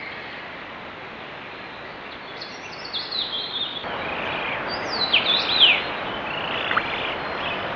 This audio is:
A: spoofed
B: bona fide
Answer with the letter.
B